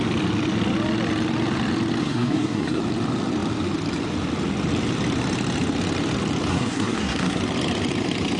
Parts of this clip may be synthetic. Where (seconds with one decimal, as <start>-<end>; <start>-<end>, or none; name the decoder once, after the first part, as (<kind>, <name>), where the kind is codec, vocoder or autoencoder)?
2.0-2.8 (codec, SNAC); 6.5-7.4